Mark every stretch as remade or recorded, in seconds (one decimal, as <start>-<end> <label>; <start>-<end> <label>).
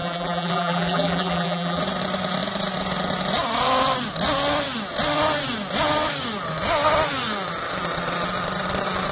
0.0-1.8 remade; 1.8-9.1 recorded